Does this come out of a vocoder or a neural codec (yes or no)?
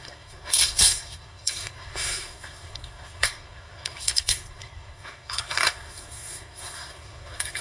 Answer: yes